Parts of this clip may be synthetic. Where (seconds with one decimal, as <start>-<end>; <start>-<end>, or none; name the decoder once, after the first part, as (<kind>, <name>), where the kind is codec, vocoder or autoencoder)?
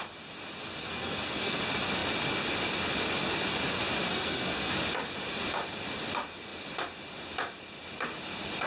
0.8-1.6 (codec, SNAC); 4.1-4.7